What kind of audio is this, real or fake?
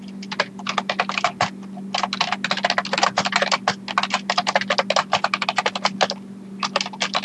real